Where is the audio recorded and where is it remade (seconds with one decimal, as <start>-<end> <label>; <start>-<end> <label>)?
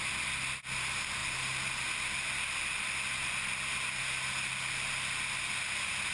0.0-6.1 recorded